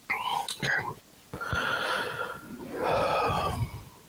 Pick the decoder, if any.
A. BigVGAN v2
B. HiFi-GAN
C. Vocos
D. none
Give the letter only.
D